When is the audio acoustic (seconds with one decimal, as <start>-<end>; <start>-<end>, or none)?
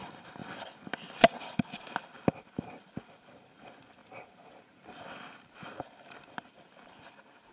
0.0-4.0; 5.0-7.5